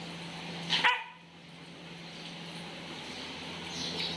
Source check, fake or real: real